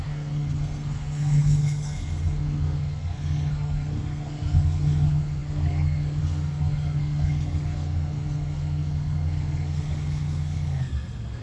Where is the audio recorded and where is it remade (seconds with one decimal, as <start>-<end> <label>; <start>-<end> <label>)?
0.0-11.4 remade